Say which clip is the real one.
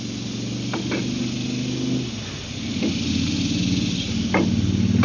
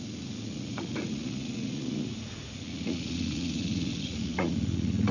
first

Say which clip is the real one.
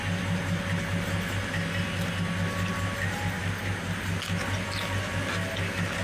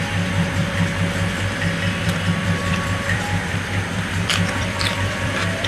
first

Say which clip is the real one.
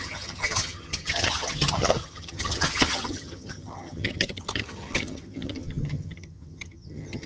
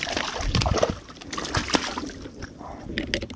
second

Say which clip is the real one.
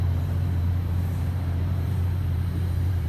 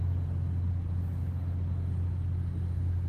second